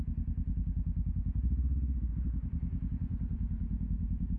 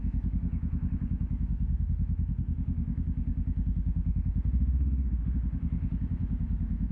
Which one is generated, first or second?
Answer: second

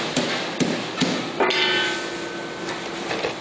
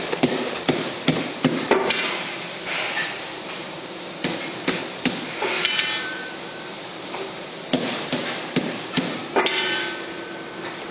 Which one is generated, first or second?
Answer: second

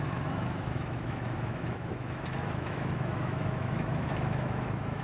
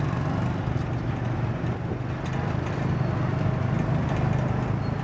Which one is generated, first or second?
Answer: first